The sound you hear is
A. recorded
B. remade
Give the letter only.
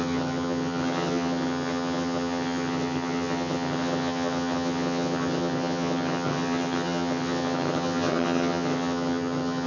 B